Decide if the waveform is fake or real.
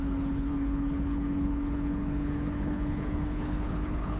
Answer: fake